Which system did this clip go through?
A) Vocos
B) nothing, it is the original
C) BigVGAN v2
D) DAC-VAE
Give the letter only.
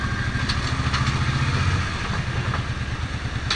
B